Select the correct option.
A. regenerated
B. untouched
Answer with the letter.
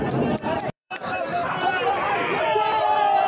A